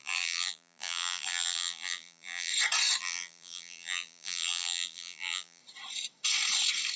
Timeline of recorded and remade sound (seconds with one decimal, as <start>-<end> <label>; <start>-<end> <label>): 0.0-2.5 remade; 2.5-3.0 recorded; 3.0-5.6 remade; 5.6-7.0 recorded